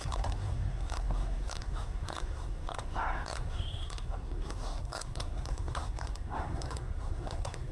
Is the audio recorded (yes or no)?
no